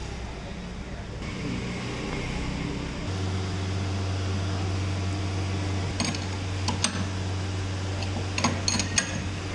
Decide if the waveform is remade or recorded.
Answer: recorded